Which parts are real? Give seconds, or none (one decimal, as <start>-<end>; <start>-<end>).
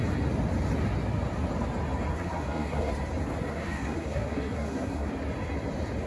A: 0.0-2.1; 2.9-3.5; 5.1-6.1